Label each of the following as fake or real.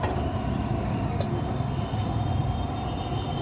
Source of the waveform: real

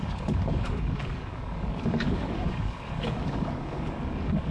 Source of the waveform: fake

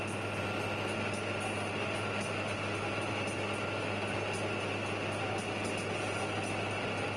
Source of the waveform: real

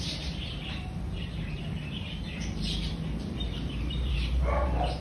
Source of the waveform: fake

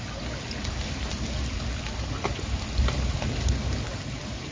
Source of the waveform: real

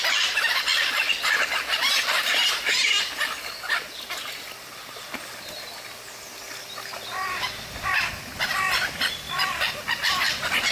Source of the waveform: real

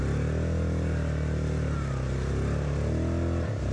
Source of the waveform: real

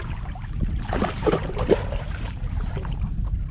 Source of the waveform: fake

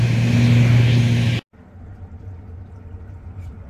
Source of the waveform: real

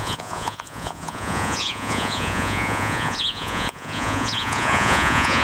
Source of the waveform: fake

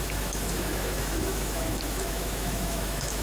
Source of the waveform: fake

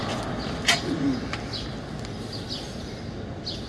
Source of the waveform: real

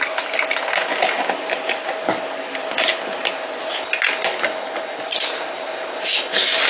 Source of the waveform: real